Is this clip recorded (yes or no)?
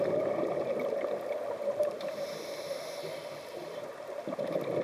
yes